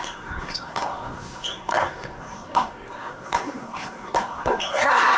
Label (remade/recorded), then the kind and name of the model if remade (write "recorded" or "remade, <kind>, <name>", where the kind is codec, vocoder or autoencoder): remade, codec, SNAC